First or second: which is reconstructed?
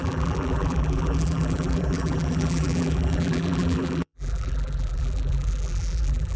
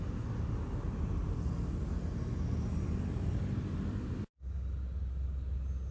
first